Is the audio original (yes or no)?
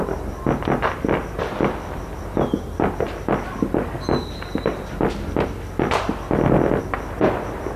yes